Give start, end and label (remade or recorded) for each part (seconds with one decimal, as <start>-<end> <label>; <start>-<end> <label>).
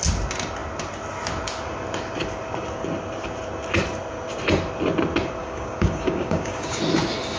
0.0-5.4 recorded; 5.4-6.8 remade; 6.8-7.4 recorded